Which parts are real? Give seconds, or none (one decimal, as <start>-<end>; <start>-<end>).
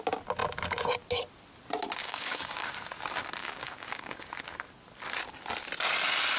0.0-2.0; 2.7-3.4; 4.2-6.4